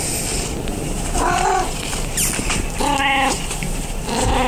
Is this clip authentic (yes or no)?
yes